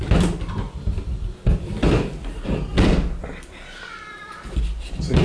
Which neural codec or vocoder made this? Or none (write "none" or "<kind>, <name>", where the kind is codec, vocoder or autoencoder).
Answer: vocoder, BigVGAN v2